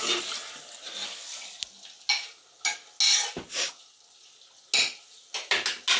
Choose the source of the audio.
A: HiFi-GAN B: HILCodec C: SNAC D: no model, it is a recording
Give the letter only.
D